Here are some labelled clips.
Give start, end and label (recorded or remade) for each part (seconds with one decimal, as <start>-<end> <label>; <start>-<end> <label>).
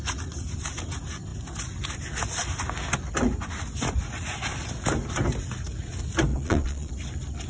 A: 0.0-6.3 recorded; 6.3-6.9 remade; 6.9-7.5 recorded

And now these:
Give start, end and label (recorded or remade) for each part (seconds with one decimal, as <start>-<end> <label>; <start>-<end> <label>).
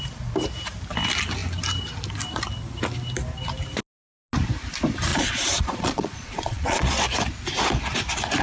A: 0.0-5.1 recorded; 5.1-7.0 remade; 7.0-8.4 recorded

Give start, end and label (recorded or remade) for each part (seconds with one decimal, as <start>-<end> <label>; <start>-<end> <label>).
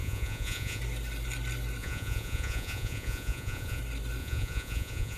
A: 0.0-0.8 remade; 0.8-1.8 recorded; 1.8-3.8 remade; 3.8-4.2 recorded; 4.2-5.2 remade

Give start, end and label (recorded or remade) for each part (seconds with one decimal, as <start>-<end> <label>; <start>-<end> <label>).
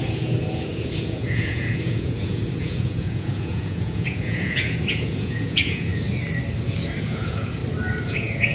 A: 0.0-5.9 remade; 5.9-7.0 recorded; 7.0-7.6 remade; 7.6-8.1 recorded; 8.1-8.5 remade